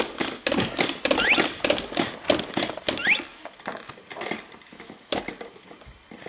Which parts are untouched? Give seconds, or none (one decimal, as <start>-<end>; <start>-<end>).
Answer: 0.0-4.7; 5.2-6.3